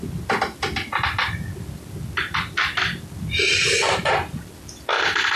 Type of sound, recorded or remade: recorded